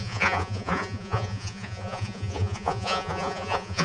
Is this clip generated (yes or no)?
yes